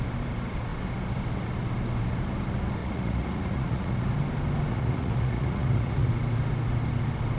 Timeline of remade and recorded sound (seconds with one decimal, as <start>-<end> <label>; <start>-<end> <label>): 0.0-2.8 recorded; 2.8-4.1 remade; 4.1-4.7 recorded; 4.7-6.1 remade; 6.1-7.4 recorded